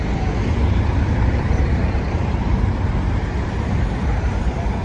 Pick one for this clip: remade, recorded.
remade